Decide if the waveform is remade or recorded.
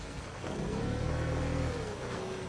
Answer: remade